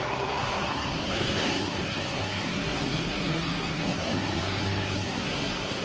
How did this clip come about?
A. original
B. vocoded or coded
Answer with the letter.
B